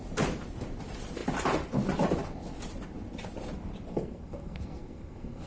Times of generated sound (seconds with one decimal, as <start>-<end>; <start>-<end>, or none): 3.9-5.5